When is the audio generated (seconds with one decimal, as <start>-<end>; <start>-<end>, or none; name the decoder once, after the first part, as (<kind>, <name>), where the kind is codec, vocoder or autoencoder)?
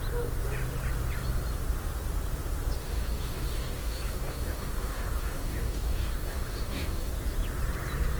2.8-7.1 (codec, DAC)